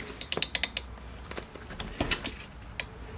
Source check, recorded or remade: recorded